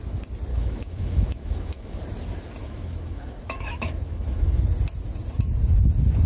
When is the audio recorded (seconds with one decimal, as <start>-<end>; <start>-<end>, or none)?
0.0-0.5; 2.0-2.6; 4.6-6.3